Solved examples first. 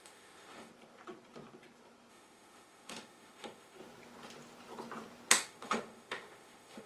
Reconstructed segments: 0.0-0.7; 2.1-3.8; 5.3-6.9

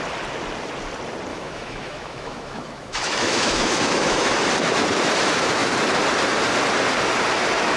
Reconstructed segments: 1.3-4.3

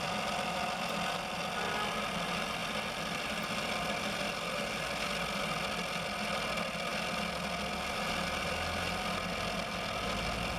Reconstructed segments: none